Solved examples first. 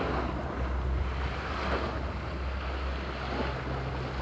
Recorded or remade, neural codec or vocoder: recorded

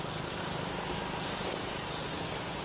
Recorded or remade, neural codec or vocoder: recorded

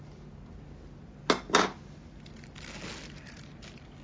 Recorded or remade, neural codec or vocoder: recorded